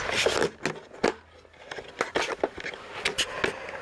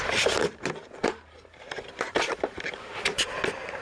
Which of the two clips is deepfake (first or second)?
second